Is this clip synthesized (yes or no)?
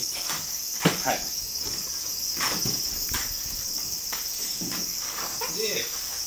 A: yes